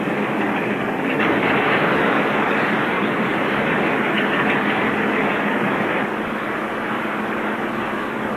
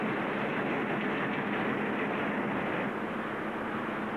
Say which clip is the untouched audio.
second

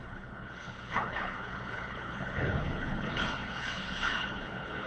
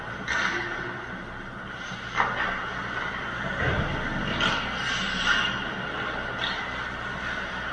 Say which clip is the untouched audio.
second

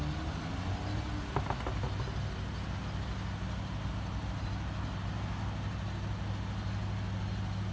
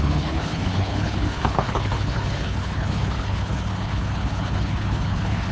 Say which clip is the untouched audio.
first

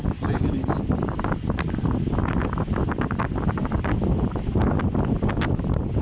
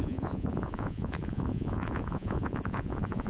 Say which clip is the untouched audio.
first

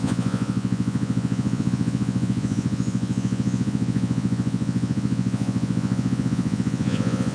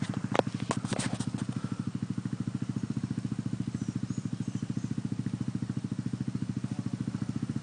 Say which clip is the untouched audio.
second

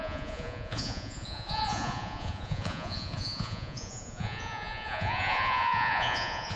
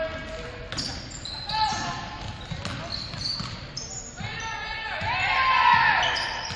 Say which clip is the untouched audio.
second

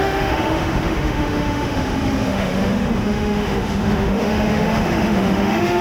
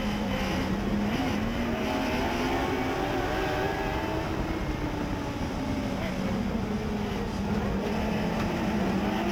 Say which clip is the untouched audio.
second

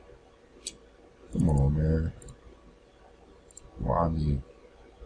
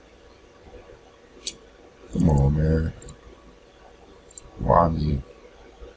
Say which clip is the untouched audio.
first